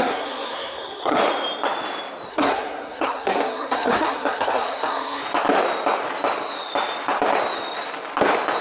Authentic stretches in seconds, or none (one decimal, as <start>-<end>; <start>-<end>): 1.2-2.3; 5.2-8.6